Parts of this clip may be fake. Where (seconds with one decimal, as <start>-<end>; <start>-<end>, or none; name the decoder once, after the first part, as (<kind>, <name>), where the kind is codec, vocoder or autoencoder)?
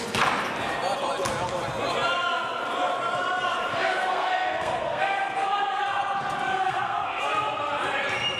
3.7-5.8 (codec, SNAC); 6.5-7.2